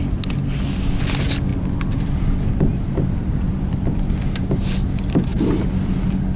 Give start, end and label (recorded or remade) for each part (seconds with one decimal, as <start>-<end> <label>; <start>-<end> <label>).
0.0-1.5 recorded; 1.5-4.2 remade; 4.2-6.4 recorded